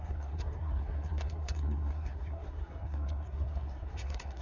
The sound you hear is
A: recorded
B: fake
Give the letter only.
B